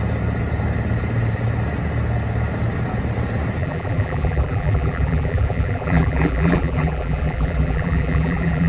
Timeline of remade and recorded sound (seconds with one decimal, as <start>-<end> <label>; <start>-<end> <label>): 0.0-3.6 recorded; 3.6-8.7 remade